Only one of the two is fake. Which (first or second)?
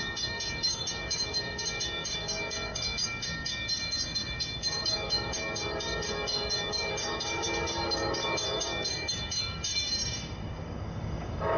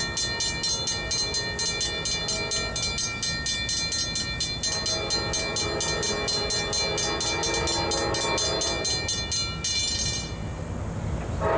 first